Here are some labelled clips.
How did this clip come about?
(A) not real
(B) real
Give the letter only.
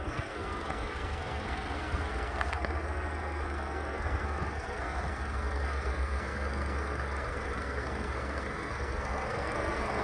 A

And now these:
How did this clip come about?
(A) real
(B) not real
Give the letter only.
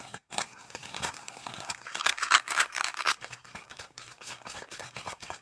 B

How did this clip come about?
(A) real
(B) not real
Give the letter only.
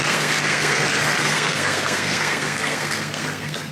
B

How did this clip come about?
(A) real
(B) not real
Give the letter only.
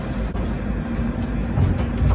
A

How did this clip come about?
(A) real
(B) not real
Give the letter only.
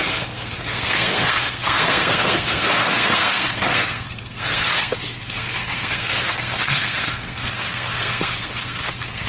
B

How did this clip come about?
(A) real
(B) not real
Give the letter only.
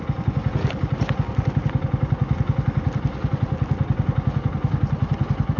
A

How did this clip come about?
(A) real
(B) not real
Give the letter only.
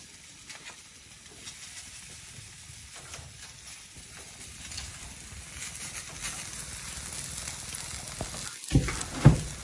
A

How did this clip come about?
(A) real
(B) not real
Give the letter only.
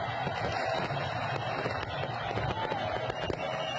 A